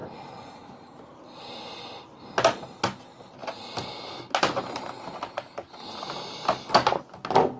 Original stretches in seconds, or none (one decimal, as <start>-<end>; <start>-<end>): 0.0-7.6